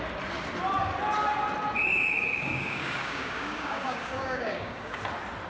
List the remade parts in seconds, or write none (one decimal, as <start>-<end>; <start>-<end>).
1.8-5.0